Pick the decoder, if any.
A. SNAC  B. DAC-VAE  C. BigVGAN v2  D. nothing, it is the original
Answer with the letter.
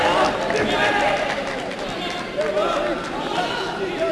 D